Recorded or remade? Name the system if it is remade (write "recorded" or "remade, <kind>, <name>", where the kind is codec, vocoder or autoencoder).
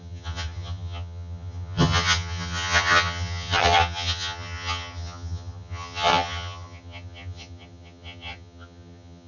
remade, vocoder, HiFi-GAN